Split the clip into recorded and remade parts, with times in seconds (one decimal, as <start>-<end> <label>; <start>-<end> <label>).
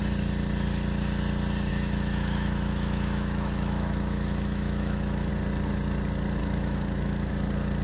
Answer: 0.0-1.7 recorded; 1.7-5.3 remade; 5.3-6.4 recorded; 6.4-7.3 remade; 7.3-7.8 recorded